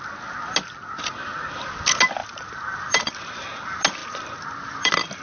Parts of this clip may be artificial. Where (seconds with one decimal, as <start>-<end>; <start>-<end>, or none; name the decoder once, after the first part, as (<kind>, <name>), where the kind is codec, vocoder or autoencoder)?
2.2-3.4 (vocoder, BigVGAN v2); 4.0-5.2